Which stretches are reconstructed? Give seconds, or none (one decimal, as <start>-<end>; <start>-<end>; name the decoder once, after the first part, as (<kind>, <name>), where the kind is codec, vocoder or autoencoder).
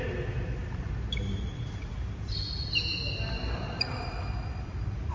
none